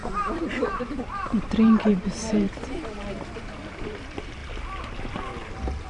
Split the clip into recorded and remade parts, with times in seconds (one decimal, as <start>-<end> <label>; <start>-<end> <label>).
0.0-4.4 remade; 4.4-5.1 recorded; 5.1-5.9 remade